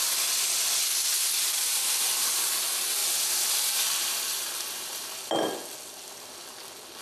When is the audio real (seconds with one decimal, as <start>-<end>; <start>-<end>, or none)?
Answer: 0.0-7.0